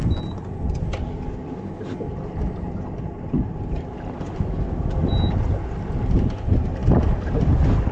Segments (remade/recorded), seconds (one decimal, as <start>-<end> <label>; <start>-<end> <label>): 0.0-7.9 recorded